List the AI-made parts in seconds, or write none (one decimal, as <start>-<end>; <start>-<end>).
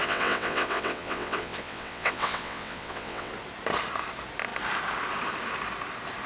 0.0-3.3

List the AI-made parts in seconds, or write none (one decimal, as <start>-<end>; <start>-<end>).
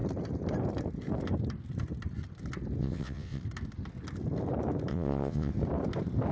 2.8-3.4; 4.9-5.5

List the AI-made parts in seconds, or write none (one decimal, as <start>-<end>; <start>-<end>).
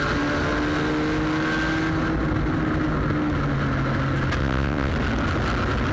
4.4-4.9